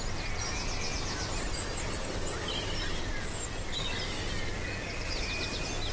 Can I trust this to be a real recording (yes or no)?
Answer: yes